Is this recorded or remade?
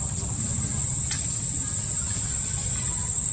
recorded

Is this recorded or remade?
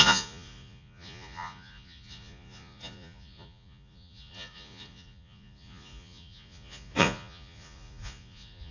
remade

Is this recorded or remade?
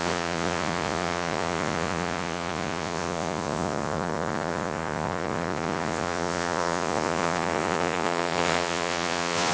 remade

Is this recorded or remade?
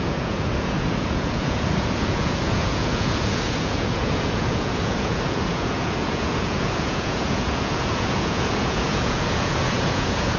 remade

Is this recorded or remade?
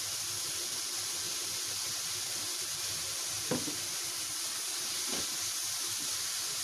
recorded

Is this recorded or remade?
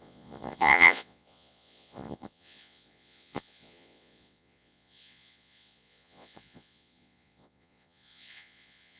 remade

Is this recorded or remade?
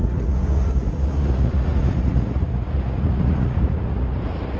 remade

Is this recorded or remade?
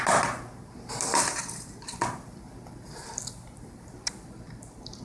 recorded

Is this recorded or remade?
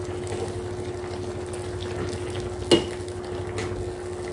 recorded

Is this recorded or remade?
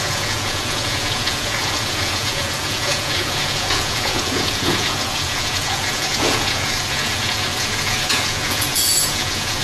remade